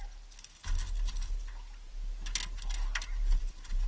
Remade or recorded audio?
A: recorded